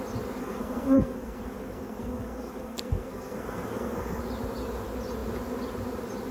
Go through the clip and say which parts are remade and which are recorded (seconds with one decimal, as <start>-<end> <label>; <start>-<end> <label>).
0.0-0.4 recorded; 0.4-4.2 remade; 4.2-6.3 recorded